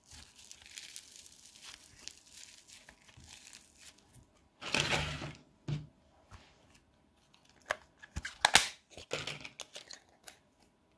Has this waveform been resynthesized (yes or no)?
no